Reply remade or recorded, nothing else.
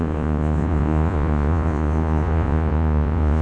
remade